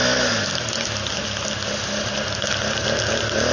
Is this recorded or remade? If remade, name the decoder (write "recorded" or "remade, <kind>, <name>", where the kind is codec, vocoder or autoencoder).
recorded